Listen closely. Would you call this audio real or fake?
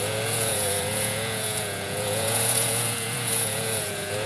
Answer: fake